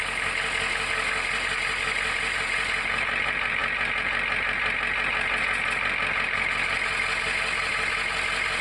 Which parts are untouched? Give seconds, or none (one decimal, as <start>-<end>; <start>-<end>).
0.0-8.6